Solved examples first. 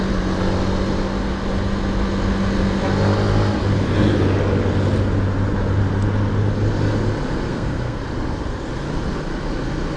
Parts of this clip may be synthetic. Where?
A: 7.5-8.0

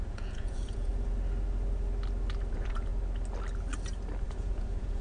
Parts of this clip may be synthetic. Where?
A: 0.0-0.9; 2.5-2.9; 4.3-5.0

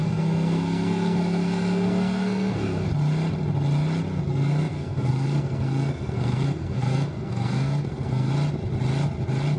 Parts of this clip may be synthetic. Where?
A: 0.0-2.9; 4.3-8.3